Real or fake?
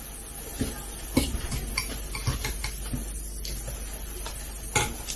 real